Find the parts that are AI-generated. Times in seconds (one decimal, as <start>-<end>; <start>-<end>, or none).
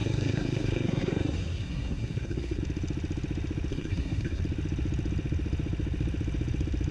0.0-2.6; 3.7-4.4